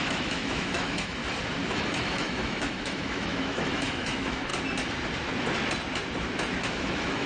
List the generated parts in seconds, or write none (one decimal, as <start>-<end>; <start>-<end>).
0.0-1.2; 1.7-4.5; 6.7-7.3